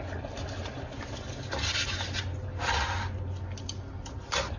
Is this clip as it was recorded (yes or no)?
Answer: yes